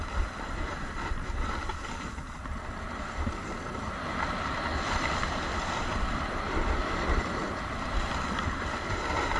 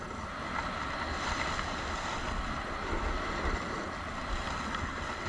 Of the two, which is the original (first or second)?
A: second